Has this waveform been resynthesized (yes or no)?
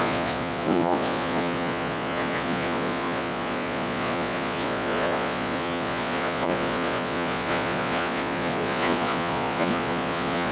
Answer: yes